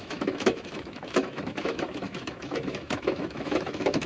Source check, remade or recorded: remade